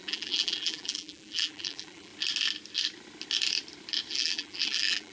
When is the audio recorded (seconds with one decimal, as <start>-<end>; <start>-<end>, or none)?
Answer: 2.1-4.1

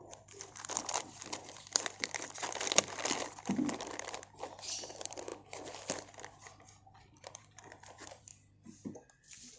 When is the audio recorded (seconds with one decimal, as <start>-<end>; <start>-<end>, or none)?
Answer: 5.3-7.0; 8.3-9.1

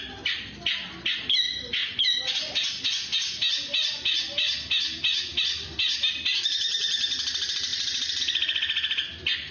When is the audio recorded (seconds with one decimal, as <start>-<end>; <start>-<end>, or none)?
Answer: 1.8-5.4

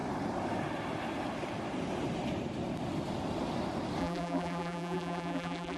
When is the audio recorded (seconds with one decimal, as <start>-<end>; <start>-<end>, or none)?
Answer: 0.0-4.0

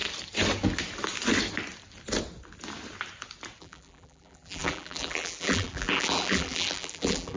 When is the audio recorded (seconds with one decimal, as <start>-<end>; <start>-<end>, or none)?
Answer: 0.0-3.6

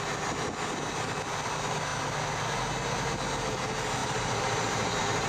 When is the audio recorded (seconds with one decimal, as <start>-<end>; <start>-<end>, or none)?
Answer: 0.0-4.0